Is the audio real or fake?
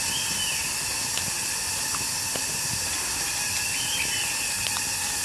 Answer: real